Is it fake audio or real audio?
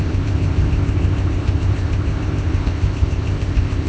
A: fake